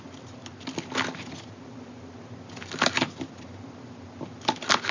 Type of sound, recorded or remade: recorded